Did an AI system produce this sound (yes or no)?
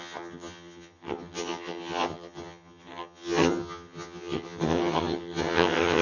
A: yes